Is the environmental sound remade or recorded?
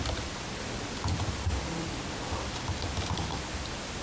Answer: recorded